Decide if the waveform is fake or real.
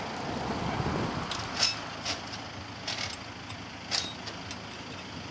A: real